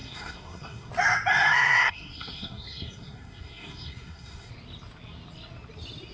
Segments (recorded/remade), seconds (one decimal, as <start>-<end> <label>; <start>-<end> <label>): 0.0-0.9 remade; 0.9-1.3 recorded; 1.3-4.5 remade; 4.5-6.1 recorded